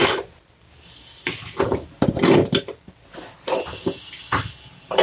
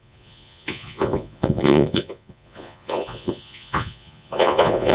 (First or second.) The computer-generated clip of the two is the second